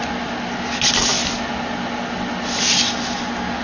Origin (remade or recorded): recorded